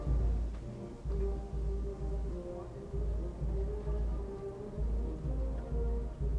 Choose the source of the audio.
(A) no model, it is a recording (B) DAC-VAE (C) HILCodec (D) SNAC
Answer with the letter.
A